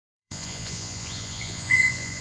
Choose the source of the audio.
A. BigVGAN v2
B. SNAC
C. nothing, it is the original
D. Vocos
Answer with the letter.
D